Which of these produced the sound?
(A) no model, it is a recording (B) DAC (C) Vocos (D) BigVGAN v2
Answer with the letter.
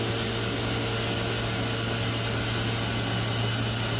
A